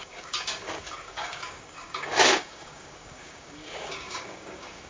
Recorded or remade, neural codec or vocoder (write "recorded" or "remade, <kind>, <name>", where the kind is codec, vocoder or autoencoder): remade, codec, DAC